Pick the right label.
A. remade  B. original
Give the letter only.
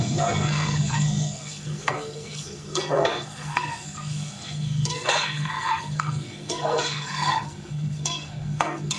A